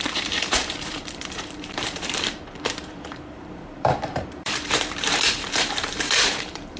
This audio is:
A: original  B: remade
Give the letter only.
B